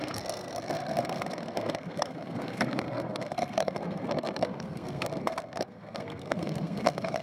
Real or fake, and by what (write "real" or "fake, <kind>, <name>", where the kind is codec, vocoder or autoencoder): fake, codec, SNAC